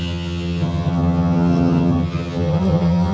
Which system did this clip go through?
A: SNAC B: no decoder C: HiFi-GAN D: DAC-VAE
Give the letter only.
C